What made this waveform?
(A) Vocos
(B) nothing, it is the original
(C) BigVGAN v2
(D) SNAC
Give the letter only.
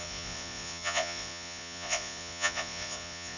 A